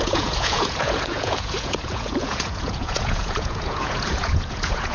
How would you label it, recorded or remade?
remade